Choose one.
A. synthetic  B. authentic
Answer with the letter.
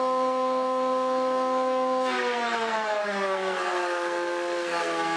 A